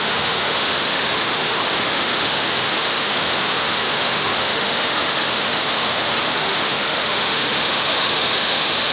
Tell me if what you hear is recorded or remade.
remade